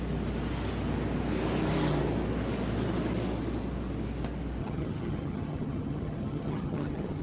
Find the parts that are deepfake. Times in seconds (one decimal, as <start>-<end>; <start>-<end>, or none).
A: 4.6-7.2